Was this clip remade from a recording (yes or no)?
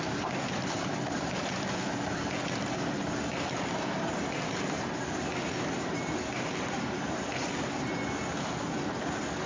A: no